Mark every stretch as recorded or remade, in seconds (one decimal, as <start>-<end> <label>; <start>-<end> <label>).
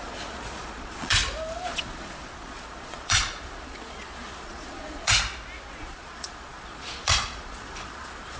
0.0-1.2 remade; 1.2-1.7 recorded; 1.7-5.1 remade; 5.1-5.7 recorded; 5.7-8.4 remade